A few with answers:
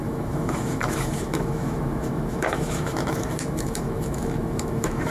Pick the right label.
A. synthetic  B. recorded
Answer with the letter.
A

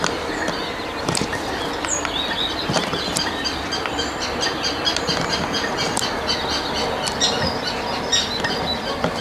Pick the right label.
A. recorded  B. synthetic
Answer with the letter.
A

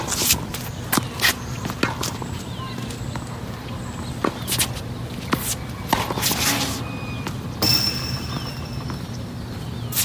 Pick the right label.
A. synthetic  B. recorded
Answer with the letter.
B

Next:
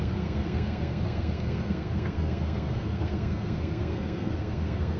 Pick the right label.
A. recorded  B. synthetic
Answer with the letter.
B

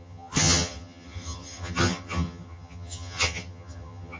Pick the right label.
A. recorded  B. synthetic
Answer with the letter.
B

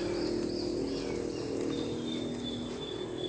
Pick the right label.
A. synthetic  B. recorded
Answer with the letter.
B